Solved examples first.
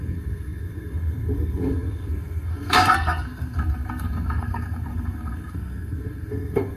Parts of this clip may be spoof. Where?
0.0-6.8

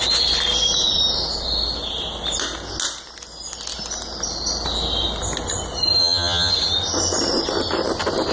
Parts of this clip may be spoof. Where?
6.0-6.5

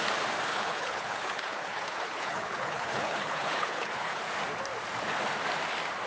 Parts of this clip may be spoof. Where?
0.5-4.2

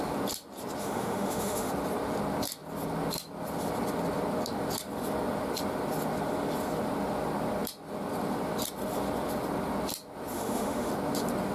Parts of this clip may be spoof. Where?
0.8-1.7; 10.3-10.9